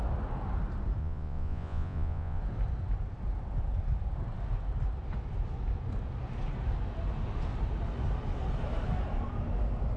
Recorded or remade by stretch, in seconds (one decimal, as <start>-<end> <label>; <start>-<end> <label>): 0.0-1.0 recorded; 1.0-2.4 remade; 2.4-10.0 recorded